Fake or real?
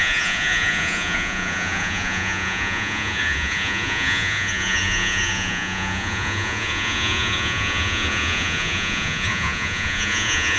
fake